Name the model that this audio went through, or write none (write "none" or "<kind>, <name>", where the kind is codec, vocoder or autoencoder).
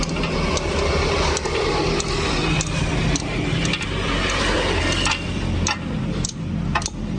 none